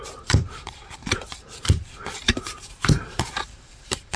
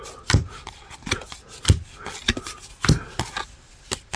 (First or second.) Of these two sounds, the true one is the second